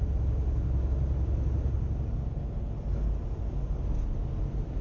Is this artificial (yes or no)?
no